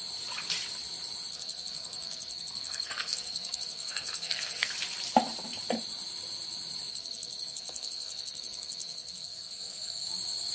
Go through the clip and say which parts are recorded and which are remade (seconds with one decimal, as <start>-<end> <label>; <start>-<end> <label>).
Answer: 0.0-1.3 recorded; 1.3-4.7 remade; 4.7-6.9 recorded; 6.9-10.1 remade; 10.1-10.5 recorded